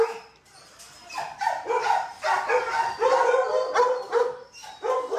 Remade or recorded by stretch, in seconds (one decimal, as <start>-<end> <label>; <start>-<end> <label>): 0.0-5.2 recorded